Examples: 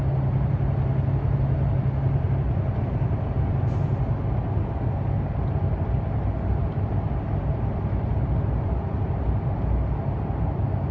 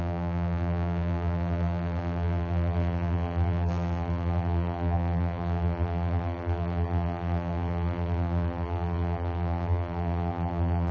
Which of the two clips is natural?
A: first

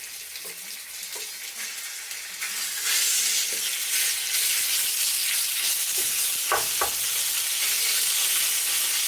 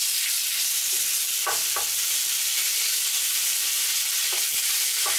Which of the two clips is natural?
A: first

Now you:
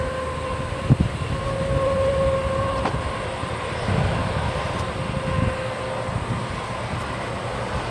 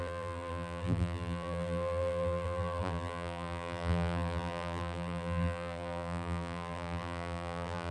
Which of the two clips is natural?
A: first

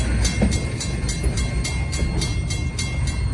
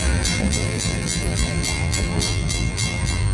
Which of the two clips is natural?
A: first